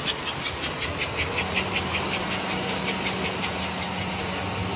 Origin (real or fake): real